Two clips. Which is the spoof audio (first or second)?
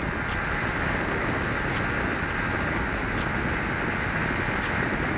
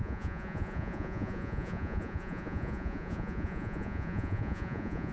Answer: second